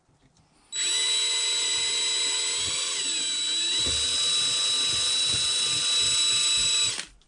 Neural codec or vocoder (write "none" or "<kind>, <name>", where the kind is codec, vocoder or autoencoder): none